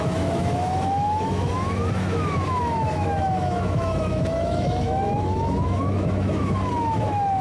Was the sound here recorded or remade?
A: remade